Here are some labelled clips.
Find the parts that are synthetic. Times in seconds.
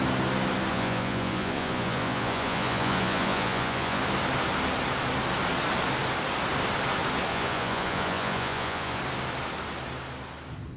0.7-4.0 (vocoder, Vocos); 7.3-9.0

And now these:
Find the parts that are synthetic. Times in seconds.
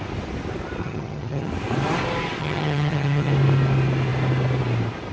0.8-1.5 (vocoder, HiFi-GAN); 2.4-3.3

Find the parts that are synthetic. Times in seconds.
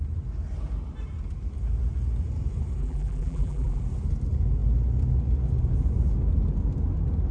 2.8-3.8 (vocoder, BigVGAN v2)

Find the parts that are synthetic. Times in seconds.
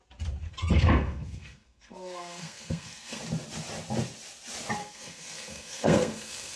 0.4-3.2 (codec, SNAC); 4.8-6.6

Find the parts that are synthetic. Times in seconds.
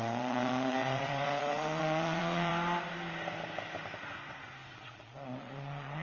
0.0-2.5 (vocoder, Vocos); 4.7-6.0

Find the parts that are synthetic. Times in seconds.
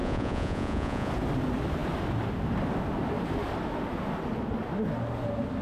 0.0-1.1 (vocoder, Vocos)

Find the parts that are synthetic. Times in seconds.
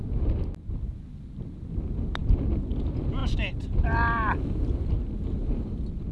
3.2-3.8 (vocoder, BigVGAN v2)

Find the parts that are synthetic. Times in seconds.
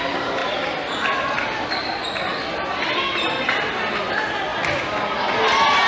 none